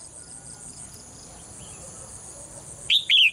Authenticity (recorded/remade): recorded